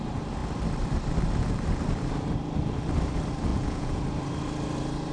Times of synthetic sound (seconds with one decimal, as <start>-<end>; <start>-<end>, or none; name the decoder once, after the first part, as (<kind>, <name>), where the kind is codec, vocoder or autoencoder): 3.5-4.0 (vocoder, Vocos)